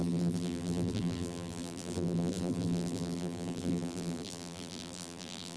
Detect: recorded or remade remade